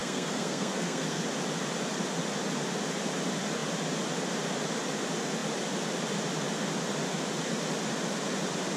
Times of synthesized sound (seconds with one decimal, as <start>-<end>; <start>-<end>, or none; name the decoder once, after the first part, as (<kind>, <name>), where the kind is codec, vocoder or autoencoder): 0.0-1.2 (codec, SNAC)